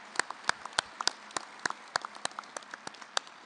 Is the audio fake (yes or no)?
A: no